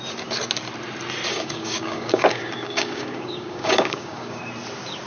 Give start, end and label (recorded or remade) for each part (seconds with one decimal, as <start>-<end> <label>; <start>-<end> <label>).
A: 0.0-1.3 recorded; 1.3-4.4 remade; 4.4-5.1 recorded